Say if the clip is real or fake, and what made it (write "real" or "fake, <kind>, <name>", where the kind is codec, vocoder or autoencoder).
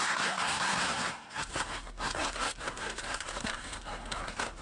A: fake, codec, SNAC